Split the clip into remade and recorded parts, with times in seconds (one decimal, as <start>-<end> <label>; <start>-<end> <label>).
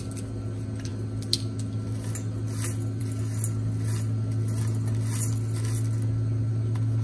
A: 0.0-7.0 recorded